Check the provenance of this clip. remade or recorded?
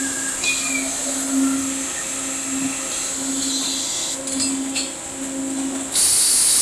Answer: recorded